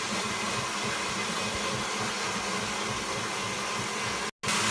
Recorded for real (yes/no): yes